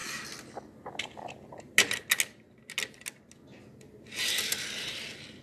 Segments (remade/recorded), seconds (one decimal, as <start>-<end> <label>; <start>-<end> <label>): 0.0-5.4 recorded